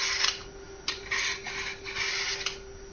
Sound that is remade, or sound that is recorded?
recorded